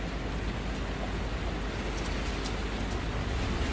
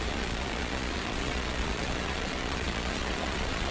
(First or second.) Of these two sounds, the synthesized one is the second